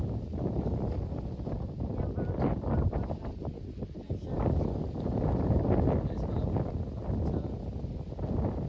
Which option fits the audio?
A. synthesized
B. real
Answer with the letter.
B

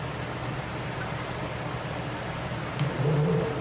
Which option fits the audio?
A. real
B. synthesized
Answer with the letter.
A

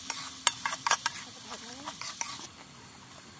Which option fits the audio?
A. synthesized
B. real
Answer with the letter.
B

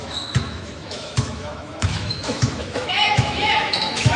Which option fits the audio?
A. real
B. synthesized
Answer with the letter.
B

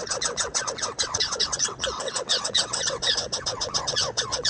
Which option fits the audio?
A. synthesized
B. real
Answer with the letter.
A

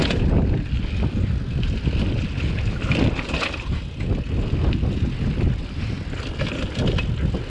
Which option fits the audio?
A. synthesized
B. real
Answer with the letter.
B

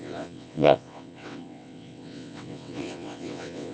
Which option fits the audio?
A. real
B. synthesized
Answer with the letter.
B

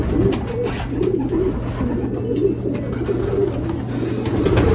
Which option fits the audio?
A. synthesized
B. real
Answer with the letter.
B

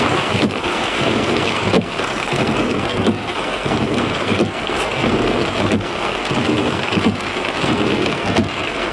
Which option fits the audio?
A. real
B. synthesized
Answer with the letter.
B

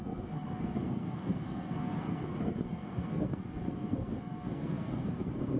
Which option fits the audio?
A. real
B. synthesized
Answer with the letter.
B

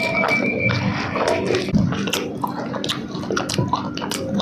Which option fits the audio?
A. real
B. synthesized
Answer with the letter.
A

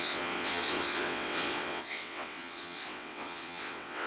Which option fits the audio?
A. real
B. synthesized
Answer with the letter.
B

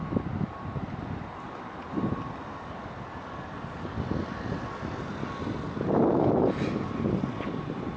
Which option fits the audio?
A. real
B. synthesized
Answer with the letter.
A